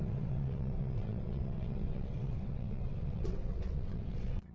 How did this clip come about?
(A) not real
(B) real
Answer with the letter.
A